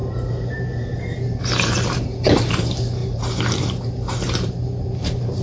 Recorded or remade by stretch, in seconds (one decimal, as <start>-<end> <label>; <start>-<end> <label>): 0.0-5.4 remade